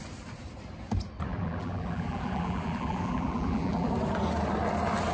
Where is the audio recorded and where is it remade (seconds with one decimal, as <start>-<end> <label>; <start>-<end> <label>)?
0.0-1.3 recorded; 1.3-3.9 remade; 3.9-5.1 recorded